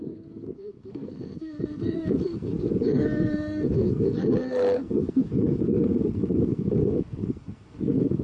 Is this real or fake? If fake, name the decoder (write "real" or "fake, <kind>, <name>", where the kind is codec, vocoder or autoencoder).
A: fake, codec, SNAC